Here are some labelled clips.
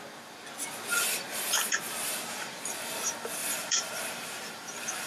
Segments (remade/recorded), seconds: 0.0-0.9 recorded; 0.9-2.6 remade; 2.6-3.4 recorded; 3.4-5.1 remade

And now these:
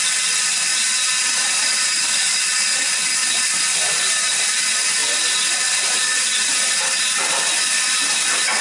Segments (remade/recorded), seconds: 0.0-0.7 remade; 0.7-1.6 recorded; 1.6-3.2 remade; 3.2-4.1 recorded; 4.1-5.0 remade; 5.0-5.6 recorded; 5.6-8.6 remade

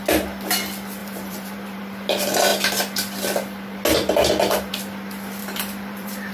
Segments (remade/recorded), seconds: 0.0-1.0 recorded; 1.0-1.8 remade; 1.8-5.4 recorded; 5.4-6.3 remade

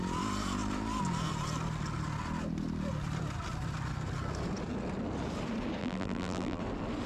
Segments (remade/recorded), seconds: 0.0-5.8 recorded; 5.8-6.6 remade; 6.6-7.1 recorded